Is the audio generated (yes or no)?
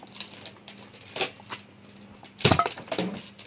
no